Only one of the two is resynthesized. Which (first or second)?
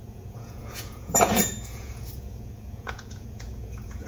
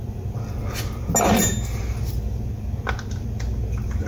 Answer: first